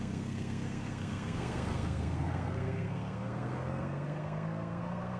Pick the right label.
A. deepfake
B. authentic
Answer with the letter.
A